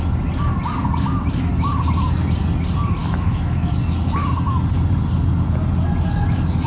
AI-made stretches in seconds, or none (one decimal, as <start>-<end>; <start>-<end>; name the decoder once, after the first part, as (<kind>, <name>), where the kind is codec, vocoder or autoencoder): 3.0-3.7 (autoencoder, DAC-VAE)